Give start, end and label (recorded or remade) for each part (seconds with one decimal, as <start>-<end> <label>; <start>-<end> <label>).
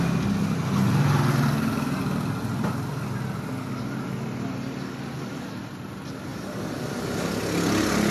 0.0-8.1 recorded